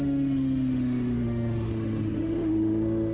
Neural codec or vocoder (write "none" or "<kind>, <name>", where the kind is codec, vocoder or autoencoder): autoencoder, DAC-VAE